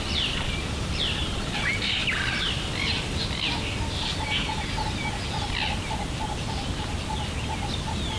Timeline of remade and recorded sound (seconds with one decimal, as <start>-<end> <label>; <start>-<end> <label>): 0.0-8.2 recorded